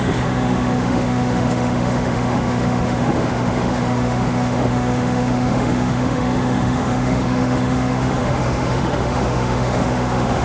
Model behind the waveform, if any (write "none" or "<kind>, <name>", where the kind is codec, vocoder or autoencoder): autoencoder, DAC-VAE